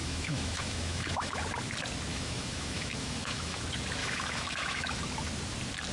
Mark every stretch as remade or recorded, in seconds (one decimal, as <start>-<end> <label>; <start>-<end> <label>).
0.0-1.4 remade; 1.4-2.1 recorded; 2.1-3.6 remade; 3.6-4.0 recorded; 4.0-5.0 remade; 5.0-5.9 recorded